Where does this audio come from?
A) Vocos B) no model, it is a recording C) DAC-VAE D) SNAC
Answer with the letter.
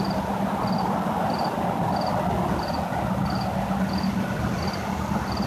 B